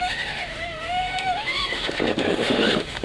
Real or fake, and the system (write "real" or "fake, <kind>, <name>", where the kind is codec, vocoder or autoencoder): fake, autoencoder, DAC-VAE